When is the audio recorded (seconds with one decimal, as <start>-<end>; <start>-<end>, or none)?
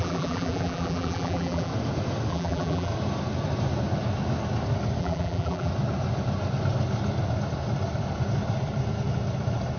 1.7-2.3; 2.9-5.0; 5.7-9.8